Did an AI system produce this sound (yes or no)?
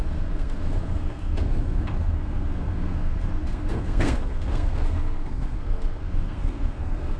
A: yes